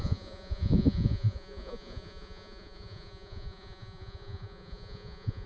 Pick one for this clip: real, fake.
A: fake